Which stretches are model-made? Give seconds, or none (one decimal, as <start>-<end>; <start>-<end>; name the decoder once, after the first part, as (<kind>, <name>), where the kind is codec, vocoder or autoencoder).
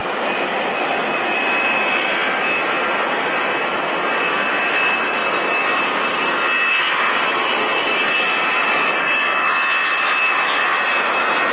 none